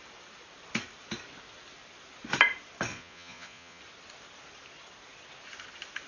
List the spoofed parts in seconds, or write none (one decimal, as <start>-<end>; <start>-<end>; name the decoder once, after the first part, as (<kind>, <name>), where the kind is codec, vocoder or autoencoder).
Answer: 2.9-3.8 (vocoder, Vocos)